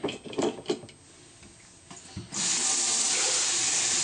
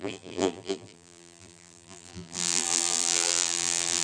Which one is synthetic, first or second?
second